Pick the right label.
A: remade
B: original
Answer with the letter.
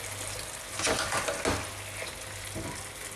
B